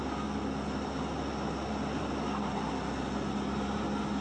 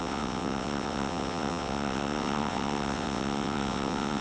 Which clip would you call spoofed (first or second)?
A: second